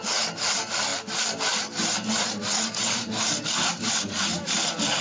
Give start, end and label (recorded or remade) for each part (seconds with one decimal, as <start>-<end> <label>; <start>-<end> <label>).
0.0-5.0 recorded